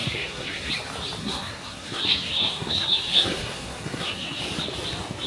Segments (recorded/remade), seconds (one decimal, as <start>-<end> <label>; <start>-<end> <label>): 0.0-0.7 remade; 0.7-1.2 recorded; 1.2-4.4 remade; 4.4-5.3 recorded